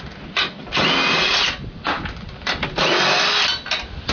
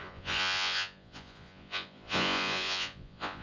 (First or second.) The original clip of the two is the first